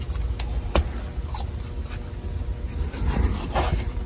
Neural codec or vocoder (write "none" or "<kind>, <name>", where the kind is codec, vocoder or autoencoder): none